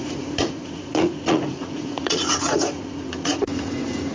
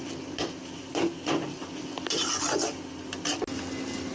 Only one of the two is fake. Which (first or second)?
first